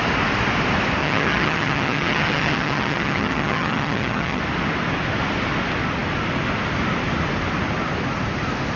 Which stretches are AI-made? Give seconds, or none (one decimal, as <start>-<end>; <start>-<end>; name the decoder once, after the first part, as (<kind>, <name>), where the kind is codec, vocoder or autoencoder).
1.0-4.4 (vocoder, HiFi-GAN)